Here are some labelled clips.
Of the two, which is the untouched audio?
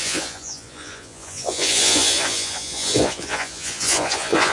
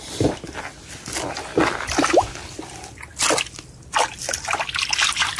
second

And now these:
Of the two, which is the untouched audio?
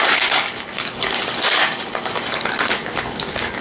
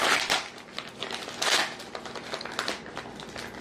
second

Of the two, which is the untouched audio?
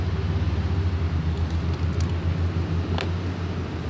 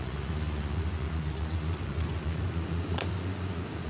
first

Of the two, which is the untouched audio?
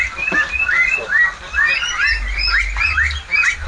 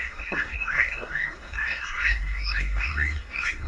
first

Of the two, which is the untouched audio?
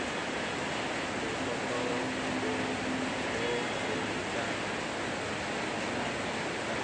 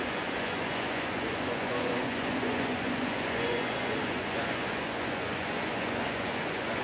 first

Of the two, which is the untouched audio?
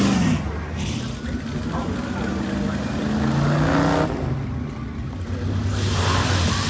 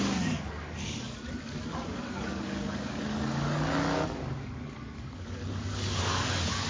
first